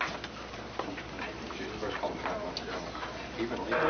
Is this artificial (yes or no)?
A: no